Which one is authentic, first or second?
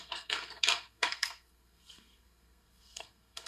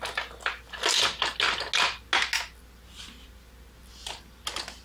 second